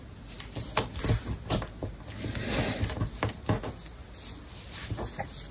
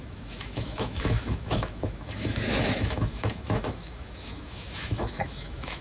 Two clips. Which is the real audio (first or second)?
first